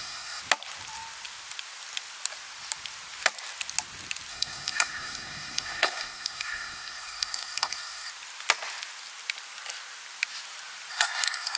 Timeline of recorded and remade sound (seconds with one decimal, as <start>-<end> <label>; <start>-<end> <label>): 0.0-0.4 remade; 0.4-4.3 recorded; 4.3-8.1 remade; 8.1-10.9 recorded; 10.9-11.6 remade